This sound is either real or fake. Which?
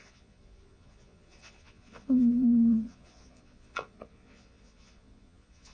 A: fake